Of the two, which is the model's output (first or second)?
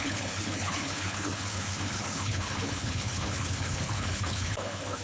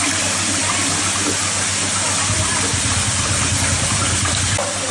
first